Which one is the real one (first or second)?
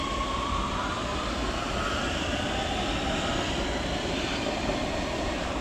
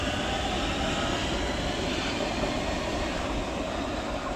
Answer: second